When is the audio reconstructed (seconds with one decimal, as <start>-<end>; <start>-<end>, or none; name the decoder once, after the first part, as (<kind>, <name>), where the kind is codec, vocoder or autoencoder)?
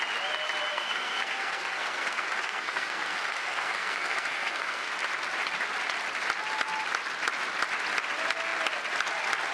0.7-4.9 (codec, SNAC)